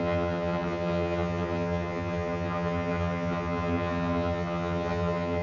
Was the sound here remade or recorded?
remade